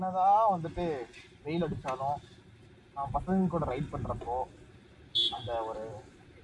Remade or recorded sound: recorded